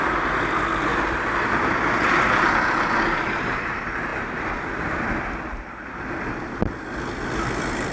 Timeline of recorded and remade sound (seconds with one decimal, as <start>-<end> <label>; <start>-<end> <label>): 0.0-7.9 recorded